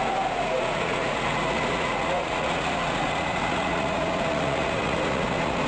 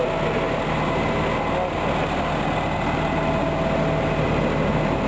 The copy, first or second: first